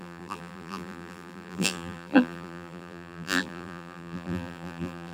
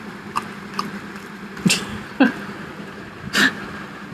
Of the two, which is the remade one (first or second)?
first